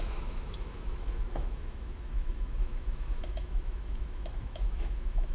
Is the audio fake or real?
fake